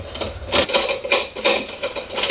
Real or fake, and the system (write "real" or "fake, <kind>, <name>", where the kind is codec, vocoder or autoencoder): real